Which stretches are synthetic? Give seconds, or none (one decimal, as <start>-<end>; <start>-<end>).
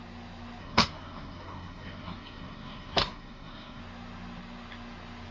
0.6-3.8